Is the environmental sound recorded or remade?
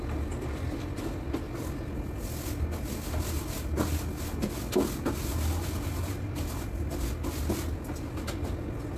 recorded